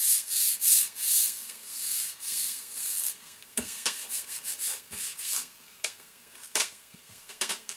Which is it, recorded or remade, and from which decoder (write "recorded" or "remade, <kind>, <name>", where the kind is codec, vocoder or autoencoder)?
remade, codec, SNAC